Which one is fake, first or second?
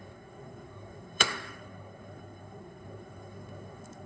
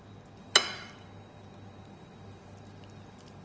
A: first